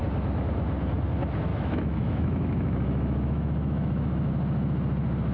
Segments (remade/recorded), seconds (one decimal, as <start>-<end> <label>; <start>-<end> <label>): 0.0-1.5 recorded; 1.5-4.3 remade; 4.3-5.3 recorded